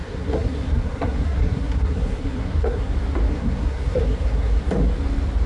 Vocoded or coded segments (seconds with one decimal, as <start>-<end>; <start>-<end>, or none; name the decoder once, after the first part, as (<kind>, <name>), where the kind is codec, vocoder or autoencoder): 0.0-2.9 (codec, SNAC); 3.3-4.6